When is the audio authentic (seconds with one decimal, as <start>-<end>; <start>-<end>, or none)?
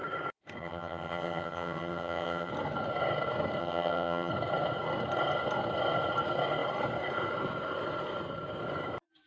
0.0-0.6; 2.5-3.6; 4.3-9.3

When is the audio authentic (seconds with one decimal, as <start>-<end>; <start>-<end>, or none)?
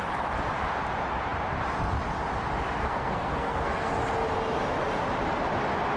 0.0-2.8; 3.9-6.0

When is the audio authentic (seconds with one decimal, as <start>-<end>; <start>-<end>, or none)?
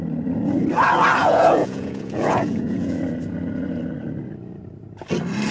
0.0-1.2; 3.0-5.5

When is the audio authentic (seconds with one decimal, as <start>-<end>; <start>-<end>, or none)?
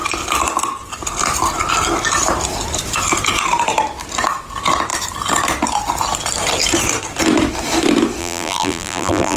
0.0-8.2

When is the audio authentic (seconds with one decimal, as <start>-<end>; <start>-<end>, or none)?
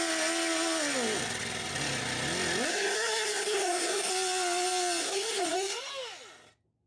0.0-2.7; 4.1-5.0; 5.9-6.9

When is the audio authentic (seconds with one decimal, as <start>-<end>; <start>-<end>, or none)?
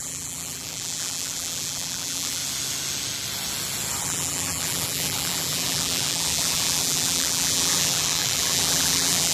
2.4-4.0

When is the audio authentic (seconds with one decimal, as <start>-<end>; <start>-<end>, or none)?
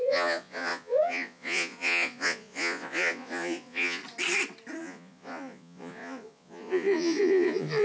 4.0-4.8